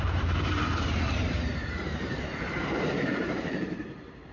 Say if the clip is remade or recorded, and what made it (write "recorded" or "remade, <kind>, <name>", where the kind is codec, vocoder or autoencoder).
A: remade, vocoder, BigVGAN v2